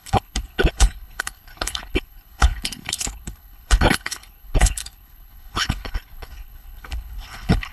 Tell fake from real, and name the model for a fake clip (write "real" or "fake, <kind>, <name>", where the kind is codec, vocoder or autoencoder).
fake, codec, HILCodec